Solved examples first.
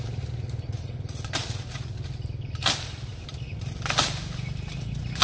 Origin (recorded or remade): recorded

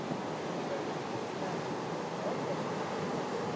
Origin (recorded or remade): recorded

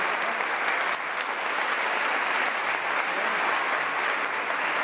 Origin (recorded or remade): recorded